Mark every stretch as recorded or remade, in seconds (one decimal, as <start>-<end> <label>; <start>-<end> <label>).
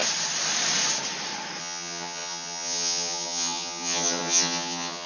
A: 0.0-1.6 recorded; 1.6-5.1 remade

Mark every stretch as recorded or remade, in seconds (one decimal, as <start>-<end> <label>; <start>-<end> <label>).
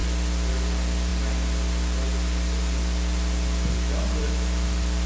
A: 0.0-5.1 recorded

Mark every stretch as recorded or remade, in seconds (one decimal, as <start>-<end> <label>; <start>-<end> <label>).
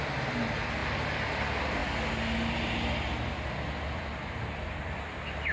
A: 0.0-5.5 recorded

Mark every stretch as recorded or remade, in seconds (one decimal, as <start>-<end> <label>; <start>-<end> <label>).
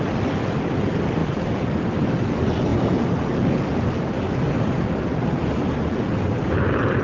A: 0.0-7.0 recorded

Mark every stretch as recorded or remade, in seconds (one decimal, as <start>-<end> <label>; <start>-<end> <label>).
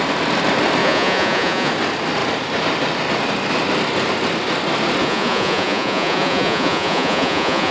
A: 0.0-0.8 recorded; 0.8-1.7 remade; 1.7-5.0 recorded; 5.0-7.7 remade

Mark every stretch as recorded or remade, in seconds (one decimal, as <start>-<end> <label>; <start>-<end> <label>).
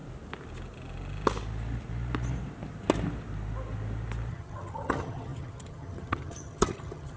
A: 0.0-4.3 recorded; 4.3-7.2 remade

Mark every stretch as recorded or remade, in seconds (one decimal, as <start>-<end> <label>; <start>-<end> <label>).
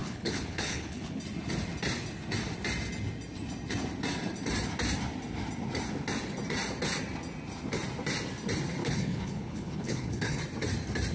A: 0.0-1.2 remade; 1.2-8.8 recorded; 8.8-10.4 remade; 10.4-11.1 recorded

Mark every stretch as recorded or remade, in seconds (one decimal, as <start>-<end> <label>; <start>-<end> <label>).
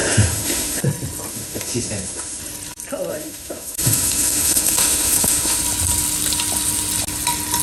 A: 0.0-0.8 remade; 0.8-1.3 recorded; 1.3-2.4 remade; 2.4-3.1 recorded; 3.1-5.6 remade; 5.6-7.6 recorded